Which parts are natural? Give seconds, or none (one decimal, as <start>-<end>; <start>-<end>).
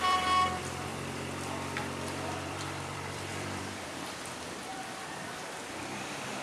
0.9-1.8; 4.7-5.5